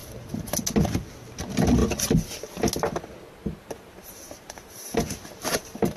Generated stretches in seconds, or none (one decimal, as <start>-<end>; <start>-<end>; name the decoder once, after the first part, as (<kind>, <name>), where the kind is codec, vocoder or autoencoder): 0.0-0.5 (vocoder, BigVGAN v2); 3.4-6.0